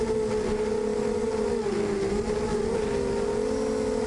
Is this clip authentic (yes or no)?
yes